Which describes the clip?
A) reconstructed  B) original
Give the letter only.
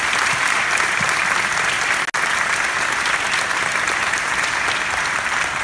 B